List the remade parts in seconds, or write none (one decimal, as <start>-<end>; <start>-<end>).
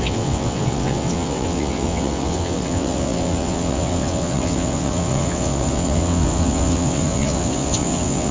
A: 0.0-8.3